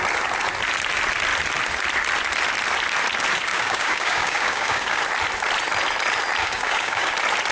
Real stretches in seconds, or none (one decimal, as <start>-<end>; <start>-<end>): 0.0-3.5; 5.0-6.4; 7.1-7.5